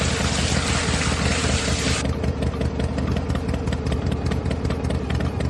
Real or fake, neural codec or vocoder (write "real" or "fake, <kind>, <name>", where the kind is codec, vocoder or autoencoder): real